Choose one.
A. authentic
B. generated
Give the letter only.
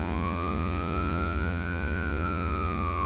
B